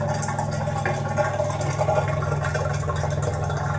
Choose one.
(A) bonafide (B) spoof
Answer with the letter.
A